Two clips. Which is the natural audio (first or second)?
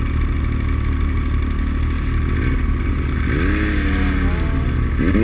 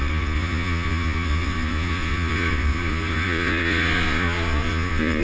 first